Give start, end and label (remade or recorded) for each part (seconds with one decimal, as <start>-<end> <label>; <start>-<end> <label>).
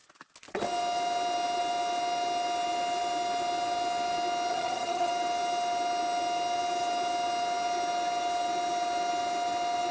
0.0-4.5 recorded; 4.5-5.1 remade; 5.1-9.9 recorded